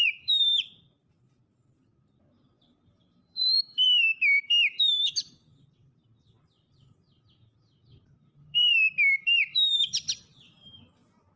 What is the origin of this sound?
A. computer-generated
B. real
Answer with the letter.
A